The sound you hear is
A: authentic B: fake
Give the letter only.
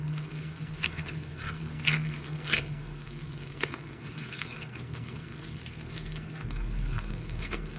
B